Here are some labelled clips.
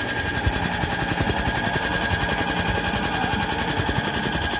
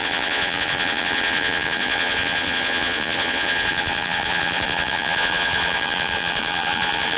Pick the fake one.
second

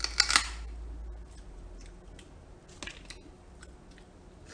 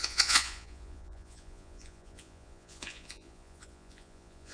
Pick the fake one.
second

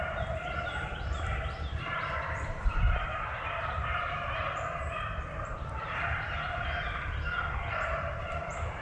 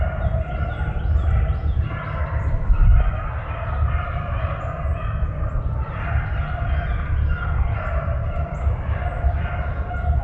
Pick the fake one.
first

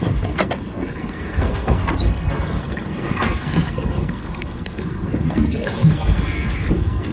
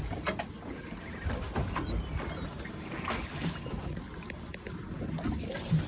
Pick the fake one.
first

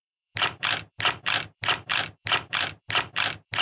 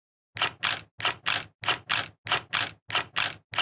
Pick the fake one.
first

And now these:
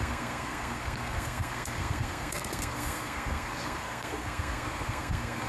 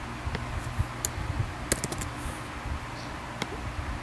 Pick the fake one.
first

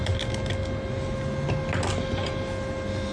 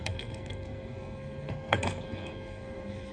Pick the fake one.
second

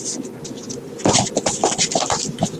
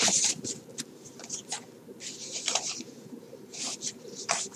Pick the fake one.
second